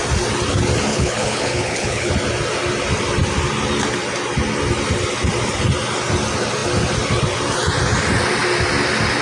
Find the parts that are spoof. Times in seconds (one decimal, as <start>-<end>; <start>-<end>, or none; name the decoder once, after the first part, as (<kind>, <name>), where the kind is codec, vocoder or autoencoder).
0.9-2.1 (codec, HILCodec)